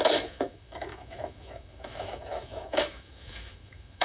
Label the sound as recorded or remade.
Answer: remade